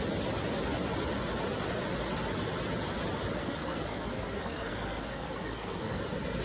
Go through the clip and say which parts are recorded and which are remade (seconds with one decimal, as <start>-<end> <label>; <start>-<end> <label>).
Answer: 0.0-3.4 recorded; 3.4-6.0 remade; 6.0-6.4 recorded